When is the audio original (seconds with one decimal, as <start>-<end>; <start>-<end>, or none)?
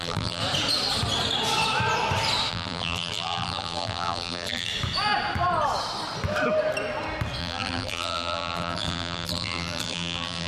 0.4-2.5; 4.7-7.4